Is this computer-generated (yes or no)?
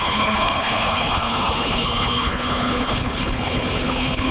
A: yes